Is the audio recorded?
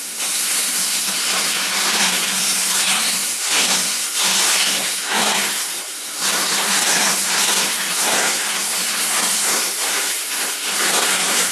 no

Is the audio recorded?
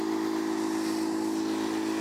yes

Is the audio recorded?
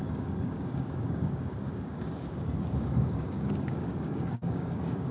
no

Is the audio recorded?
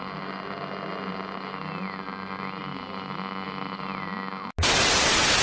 yes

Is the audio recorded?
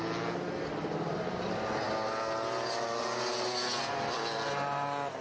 yes